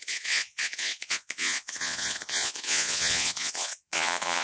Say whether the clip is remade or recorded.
remade